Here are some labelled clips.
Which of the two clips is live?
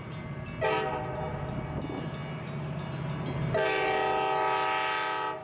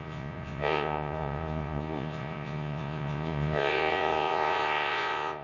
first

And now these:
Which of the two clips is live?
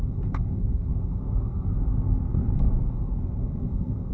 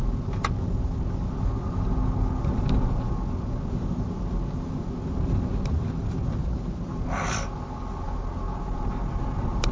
second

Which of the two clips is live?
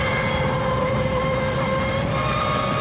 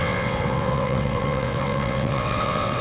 first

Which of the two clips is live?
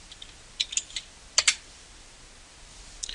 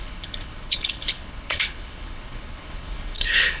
first